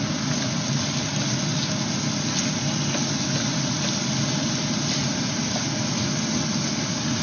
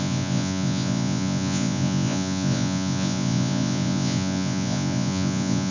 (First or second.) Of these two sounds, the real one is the first